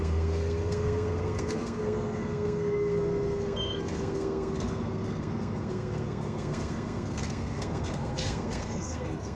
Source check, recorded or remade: remade